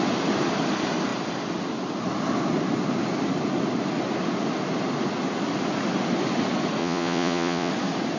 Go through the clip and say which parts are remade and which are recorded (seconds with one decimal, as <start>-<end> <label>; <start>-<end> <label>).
0.0-6.8 recorded; 6.8-7.7 remade; 7.7-8.2 recorded